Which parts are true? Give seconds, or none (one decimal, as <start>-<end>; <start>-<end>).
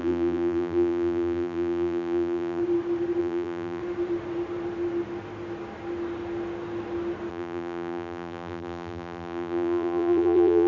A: 2.6-3.2; 3.8-7.3